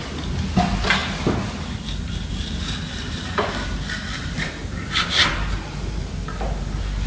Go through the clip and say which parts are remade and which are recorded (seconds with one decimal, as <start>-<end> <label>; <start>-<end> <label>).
0.0-7.1 recorded